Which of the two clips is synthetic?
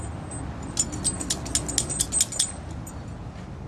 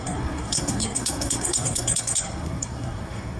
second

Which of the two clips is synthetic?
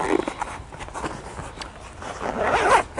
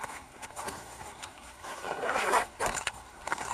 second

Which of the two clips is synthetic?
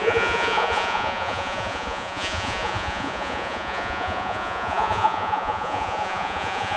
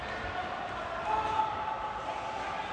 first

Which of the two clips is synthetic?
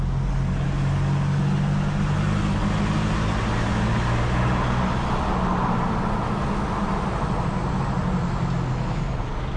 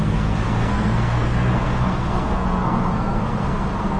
second